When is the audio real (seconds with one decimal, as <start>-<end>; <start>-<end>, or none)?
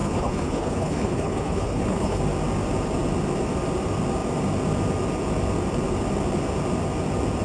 2.2-7.4